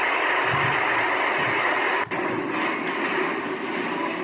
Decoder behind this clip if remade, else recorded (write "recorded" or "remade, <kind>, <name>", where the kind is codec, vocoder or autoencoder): recorded